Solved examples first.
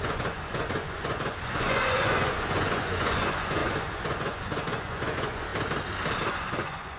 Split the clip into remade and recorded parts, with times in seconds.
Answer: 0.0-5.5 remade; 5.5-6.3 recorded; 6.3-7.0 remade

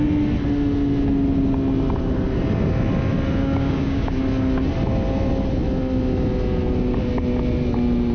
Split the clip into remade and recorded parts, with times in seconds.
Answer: 0.0-3.4 recorded; 3.4-4.2 remade; 4.2-8.1 recorded

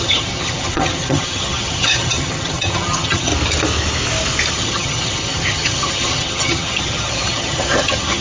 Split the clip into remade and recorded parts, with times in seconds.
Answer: 0.0-3.3 remade; 3.3-4.5 recorded; 4.5-8.2 remade

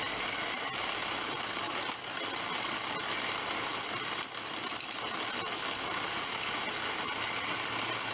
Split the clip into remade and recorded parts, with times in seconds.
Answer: 0.0-8.1 recorded

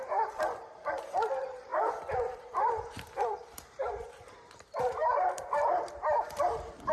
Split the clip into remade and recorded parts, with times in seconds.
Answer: 0.0-6.9 remade